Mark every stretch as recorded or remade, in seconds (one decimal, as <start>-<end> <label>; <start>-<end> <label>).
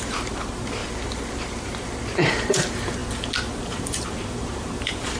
0.0-3.0 remade; 3.0-3.6 recorded; 3.6-5.2 remade